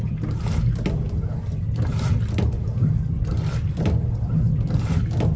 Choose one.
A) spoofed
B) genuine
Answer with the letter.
B